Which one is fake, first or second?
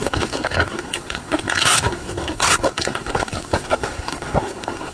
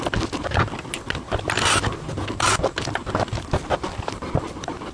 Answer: first